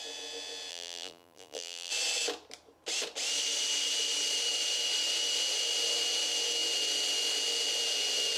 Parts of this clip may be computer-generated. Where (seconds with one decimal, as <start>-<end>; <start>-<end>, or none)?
0.7-1.9